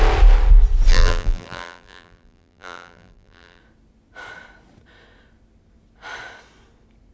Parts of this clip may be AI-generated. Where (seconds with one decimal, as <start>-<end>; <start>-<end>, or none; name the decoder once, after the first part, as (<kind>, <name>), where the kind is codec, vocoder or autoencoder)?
0.9-3.6 (vocoder, BigVGAN v2)